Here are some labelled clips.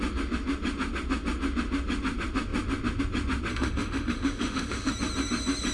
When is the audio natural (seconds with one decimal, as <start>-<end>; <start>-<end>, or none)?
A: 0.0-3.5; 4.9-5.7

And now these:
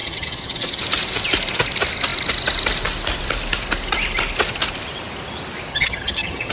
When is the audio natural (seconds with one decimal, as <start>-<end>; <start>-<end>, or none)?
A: 0.8-5.7

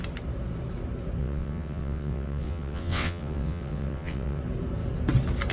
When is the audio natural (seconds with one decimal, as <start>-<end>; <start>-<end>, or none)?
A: 0.0-1.2; 4.4-5.5